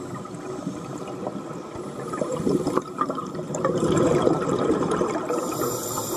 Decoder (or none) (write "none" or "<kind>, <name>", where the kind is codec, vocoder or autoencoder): vocoder, BigVGAN v2